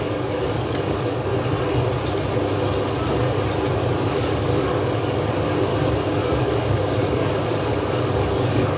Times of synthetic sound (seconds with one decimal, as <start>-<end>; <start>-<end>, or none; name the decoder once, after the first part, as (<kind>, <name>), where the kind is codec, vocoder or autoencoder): 0.0-1.3 (codec, DAC); 4.1-5.7; 6.4-8.8